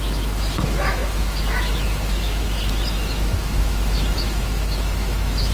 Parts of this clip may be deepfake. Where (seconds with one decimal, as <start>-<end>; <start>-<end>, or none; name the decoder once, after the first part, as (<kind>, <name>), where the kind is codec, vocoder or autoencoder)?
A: 0.0-5.5 (autoencoder, DAC-VAE)